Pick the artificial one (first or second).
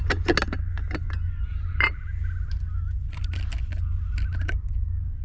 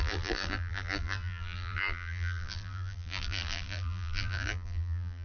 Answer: second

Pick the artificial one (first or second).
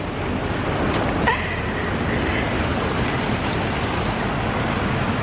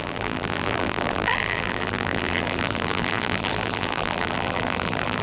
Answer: second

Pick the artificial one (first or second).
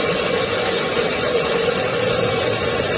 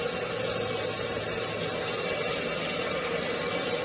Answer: first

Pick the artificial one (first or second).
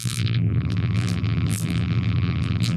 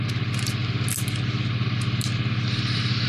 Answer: first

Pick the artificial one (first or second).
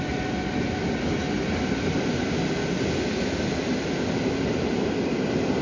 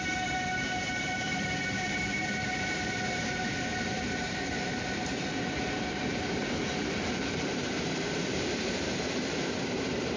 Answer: second